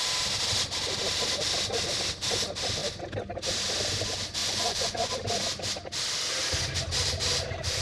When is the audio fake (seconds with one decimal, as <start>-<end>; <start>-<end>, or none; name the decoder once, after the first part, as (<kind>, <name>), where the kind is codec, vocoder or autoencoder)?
4.4-5.1 (vocoder, Vocos)